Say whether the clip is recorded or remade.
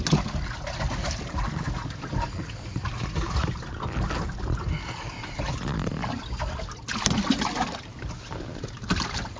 recorded